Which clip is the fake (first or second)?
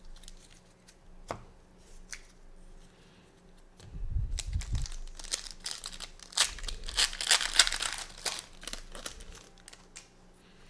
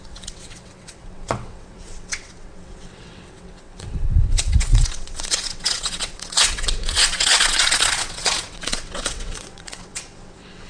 second